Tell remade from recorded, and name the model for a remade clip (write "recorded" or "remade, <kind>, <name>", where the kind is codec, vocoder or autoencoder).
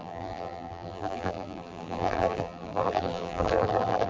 remade, vocoder, BigVGAN v2